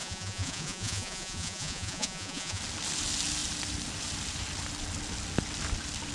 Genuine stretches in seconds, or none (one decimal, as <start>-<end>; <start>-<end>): 2.6-6.1